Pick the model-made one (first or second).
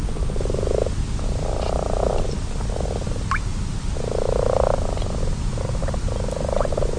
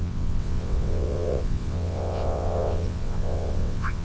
second